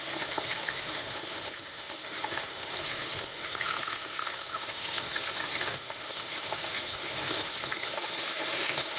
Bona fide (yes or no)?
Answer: no